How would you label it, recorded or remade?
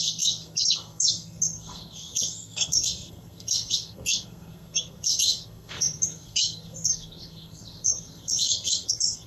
remade